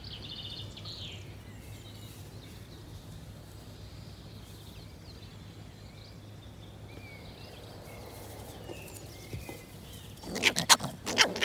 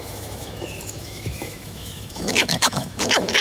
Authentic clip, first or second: first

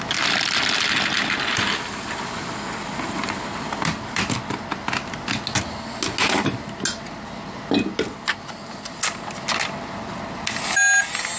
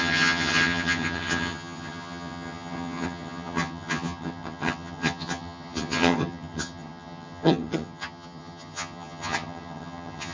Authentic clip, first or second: first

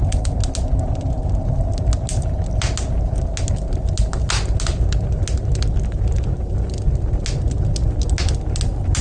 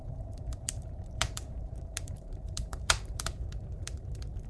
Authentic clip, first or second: first